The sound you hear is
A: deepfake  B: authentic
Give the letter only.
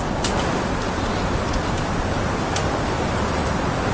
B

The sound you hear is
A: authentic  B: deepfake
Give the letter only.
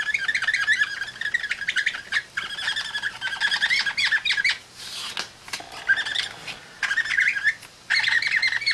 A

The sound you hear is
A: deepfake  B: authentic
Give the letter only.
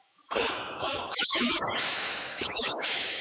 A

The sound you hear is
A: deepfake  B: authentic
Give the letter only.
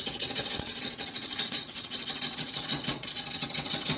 A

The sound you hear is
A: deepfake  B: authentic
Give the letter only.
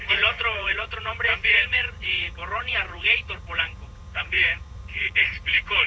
A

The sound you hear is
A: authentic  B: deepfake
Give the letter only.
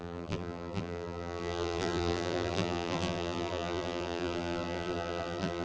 B